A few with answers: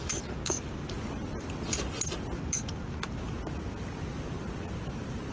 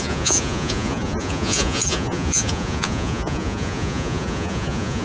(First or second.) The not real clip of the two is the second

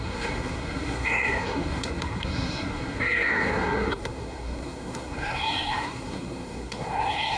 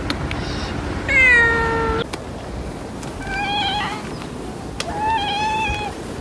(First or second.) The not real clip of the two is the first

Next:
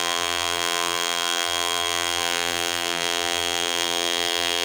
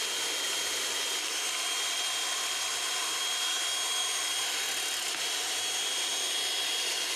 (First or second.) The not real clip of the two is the first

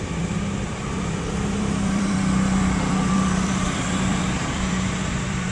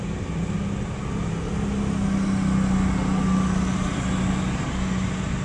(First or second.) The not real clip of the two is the first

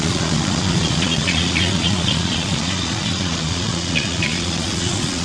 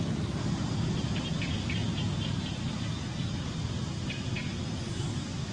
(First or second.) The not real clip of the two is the first